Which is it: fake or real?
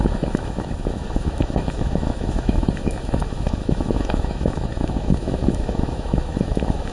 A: fake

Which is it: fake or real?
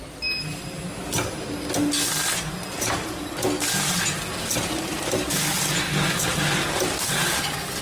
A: real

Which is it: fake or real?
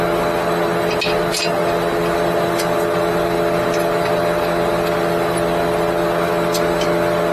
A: real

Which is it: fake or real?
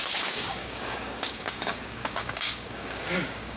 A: fake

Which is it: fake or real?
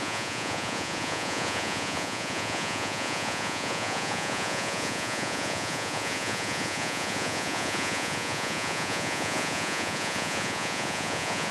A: fake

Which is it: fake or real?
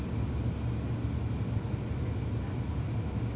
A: real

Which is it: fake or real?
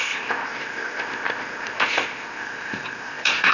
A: fake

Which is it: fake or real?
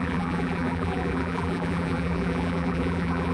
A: fake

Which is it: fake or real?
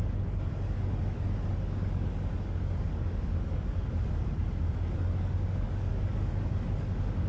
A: fake